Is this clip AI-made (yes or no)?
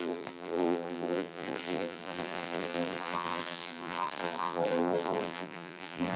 yes